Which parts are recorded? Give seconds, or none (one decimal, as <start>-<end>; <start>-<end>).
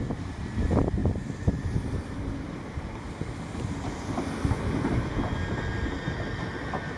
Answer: 0.0-1.0; 5.2-7.0